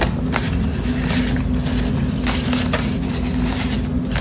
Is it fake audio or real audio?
real